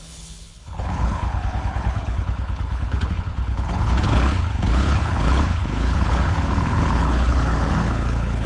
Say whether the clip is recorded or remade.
remade